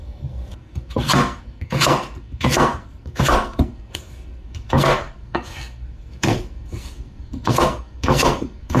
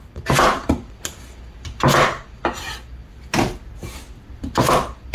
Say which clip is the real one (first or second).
second